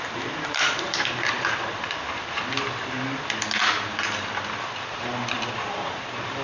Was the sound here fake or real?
fake